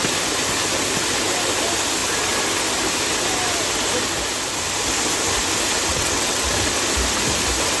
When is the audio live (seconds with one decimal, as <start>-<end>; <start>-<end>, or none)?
0.0-5.9; 6.5-7.8